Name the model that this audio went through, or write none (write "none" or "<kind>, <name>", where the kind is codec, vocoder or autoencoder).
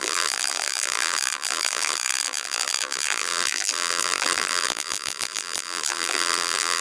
vocoder, BigVGAN v2